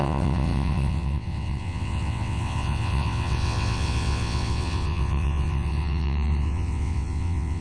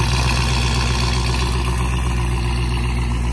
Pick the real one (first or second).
second